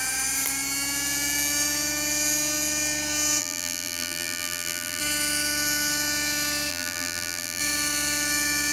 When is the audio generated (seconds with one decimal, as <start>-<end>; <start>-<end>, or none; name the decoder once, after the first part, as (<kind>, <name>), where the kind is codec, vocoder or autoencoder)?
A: 3.4-5.0 (vocoder, BigVGAN v2); 6.7-7.6